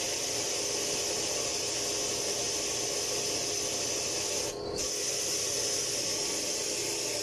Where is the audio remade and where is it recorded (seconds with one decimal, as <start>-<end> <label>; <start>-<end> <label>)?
0.0-7.2 recorded